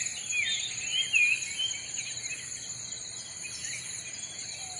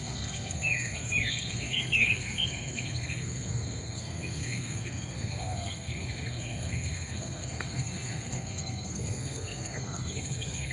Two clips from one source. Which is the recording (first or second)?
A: first